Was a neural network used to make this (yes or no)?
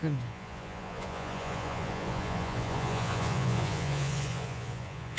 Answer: yes